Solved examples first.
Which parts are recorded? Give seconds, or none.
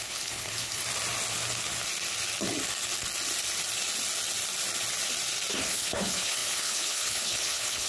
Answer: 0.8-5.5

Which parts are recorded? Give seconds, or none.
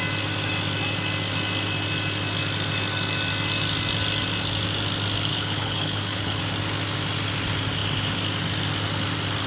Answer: 0.0-5.3; 6.4-9.5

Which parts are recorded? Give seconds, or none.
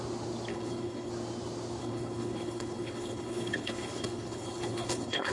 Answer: 0.0-0.5; 1.1-1.8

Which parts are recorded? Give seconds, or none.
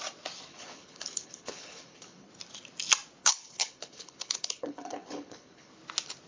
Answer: 0.0-0.5; 2.3-3.2; 5.7-6.3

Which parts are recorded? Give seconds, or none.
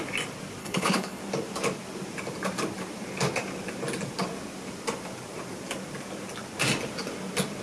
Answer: 0.0-0.6; 1.2-7.6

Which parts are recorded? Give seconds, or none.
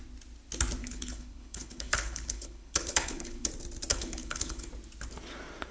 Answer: 0.0-0.8; 3.5-3.9; 4.7-5.7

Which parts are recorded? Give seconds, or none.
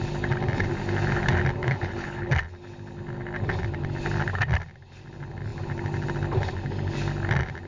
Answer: 0.0-1.6; 2.3-7.7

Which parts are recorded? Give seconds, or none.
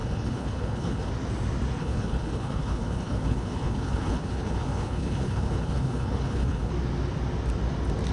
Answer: 1.1-1.8; 6.7-8.1